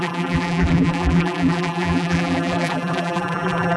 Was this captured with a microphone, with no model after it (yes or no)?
no